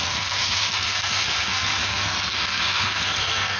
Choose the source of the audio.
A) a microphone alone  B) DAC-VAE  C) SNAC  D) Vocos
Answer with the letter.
C